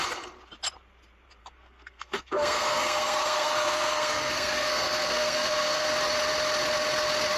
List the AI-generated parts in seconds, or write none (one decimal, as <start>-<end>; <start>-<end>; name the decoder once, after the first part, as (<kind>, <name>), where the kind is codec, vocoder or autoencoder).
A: 1.4-5.8 (codec, SNAC)